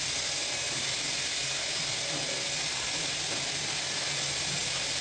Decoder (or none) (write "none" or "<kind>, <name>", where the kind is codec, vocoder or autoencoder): none